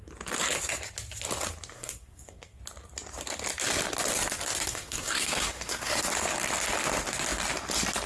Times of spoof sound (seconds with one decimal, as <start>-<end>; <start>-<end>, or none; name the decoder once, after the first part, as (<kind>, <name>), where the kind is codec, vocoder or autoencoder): 1.7-2.6 (codec, SNAC); 4.7-6.0